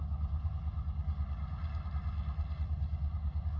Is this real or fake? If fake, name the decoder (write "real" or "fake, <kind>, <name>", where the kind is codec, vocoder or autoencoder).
real